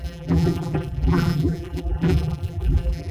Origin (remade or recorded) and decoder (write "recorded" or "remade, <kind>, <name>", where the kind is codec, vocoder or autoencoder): remade, vocoder, BigVGAN v2